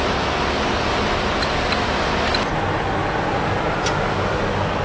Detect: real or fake real